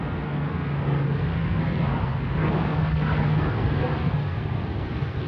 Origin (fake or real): fake